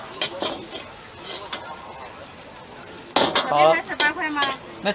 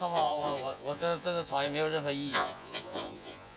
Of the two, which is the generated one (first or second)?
second